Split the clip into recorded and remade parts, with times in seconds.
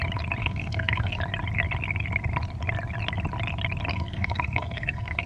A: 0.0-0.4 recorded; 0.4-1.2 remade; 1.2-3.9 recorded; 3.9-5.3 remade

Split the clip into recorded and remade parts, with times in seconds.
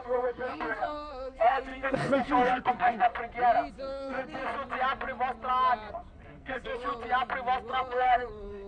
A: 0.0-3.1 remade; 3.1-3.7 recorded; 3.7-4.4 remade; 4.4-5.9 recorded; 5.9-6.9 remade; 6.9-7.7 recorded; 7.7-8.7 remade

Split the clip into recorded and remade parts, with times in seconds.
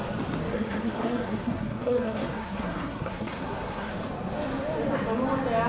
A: 0.0-0.5 recorded; 0.5-3.9 remade; 3.9-5.7 recorded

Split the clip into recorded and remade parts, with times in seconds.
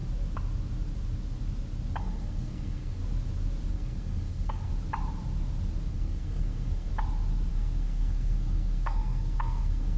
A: 0.0-2.0 recorded; 2.0-3.0 remade; 3.0-3.7 recorded; 3.7-4.7 remade; 4.7-5.9 recorded; 5.9-6.9 remade; 6.9-7.5 recorded; 7.5-10.0 remade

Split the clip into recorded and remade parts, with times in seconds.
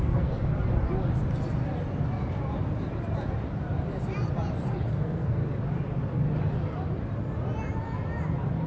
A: 0.0-0.5 remade; 0.5-4.9 recorded; 4.9-5.4 remade; 5.4-8.7 recorded